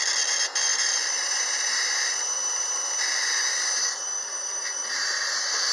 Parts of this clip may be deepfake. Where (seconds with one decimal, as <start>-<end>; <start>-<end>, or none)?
0.7-1.9